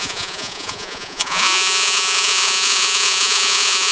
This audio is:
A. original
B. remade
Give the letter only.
B